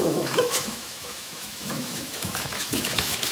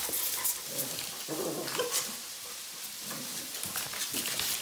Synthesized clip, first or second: first